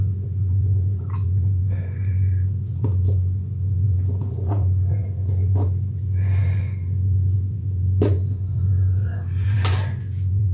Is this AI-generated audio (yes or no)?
yes